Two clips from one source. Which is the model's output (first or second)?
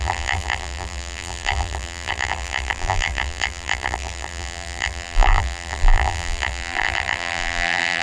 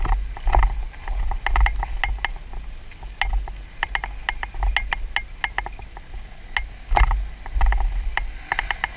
first